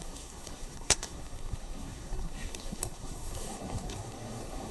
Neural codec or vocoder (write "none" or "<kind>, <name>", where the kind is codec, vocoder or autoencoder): codec, SNAC